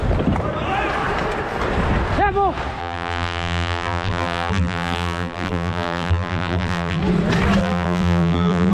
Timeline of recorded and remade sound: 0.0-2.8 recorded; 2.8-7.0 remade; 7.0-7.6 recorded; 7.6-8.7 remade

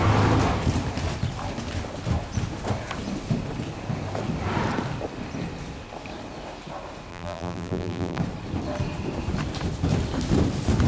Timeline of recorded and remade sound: 0.0-7.1 recorded; 7.1-8.2 remade; 8.2-10.9 recorded